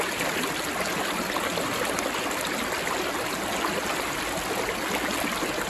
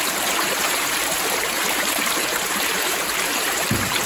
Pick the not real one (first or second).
second